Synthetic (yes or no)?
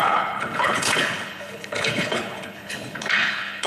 yes